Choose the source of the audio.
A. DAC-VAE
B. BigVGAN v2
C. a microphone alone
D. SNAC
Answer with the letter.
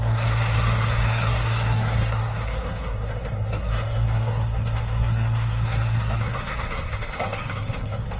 D